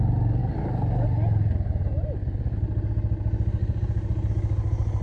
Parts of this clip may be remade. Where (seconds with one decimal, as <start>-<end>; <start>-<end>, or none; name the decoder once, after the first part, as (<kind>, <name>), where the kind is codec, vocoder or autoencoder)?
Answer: 3.6-4.3 (vocoder, BigVGAN v2)